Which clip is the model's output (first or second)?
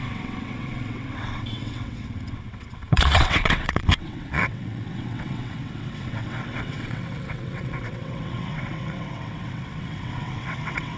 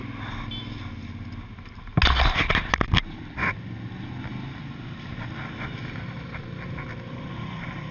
first